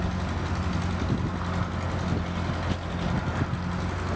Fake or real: real